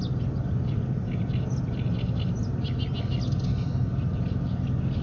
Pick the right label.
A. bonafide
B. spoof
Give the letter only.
A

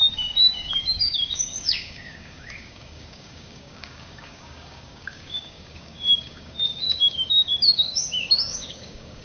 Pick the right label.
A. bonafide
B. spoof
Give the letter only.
B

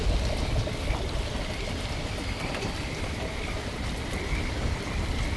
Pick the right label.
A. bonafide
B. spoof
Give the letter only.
A